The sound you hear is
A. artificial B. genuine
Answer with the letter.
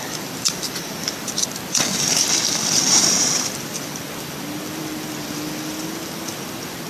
A